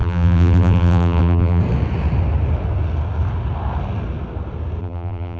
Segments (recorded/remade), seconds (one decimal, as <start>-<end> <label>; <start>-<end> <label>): 0.0-1.6 remade; 1.6-4.8 recorded; 4.8-5.4 remade